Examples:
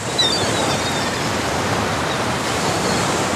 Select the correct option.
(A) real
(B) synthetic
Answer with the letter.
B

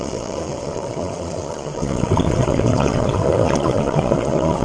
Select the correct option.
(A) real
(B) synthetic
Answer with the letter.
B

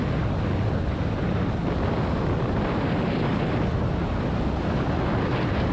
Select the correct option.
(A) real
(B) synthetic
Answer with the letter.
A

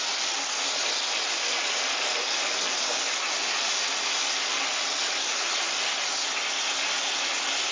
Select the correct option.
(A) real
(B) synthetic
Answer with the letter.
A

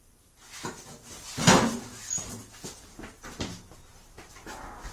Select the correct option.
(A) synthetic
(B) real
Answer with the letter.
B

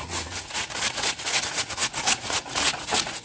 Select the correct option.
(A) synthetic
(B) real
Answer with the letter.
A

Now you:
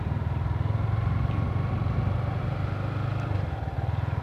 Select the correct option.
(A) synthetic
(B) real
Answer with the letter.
B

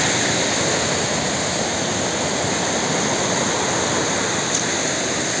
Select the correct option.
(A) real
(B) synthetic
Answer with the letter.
A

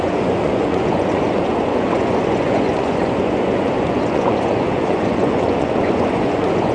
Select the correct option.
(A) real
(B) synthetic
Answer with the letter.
B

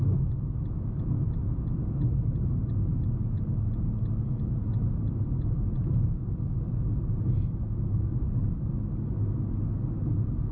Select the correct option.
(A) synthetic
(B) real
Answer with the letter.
B